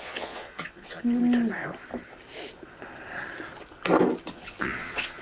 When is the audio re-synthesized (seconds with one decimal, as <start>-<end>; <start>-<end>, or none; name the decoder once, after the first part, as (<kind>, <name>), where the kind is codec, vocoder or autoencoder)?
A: 0.0-1.2 (vocoder, Vocos); 4.3-5.2